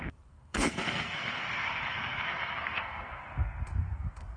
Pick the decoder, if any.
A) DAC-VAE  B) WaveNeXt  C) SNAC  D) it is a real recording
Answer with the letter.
C